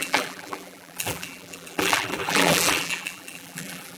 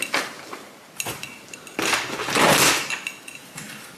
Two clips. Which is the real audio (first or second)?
second